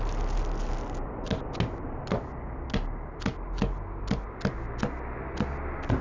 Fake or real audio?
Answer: real